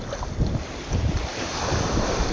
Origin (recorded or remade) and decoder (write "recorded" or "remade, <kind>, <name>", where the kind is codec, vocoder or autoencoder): recorded